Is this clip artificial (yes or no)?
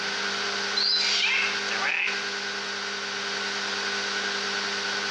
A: no